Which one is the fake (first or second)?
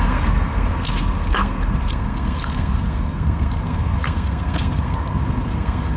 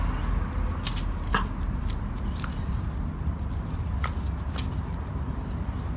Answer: first